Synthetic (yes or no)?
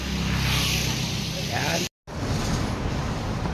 no